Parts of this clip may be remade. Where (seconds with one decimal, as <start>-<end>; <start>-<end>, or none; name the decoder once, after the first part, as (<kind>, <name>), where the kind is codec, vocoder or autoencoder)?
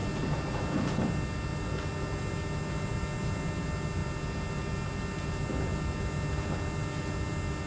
none